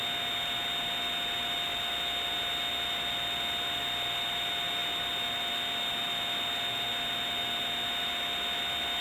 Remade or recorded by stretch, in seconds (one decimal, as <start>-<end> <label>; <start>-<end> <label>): 0.0-9.0 recorded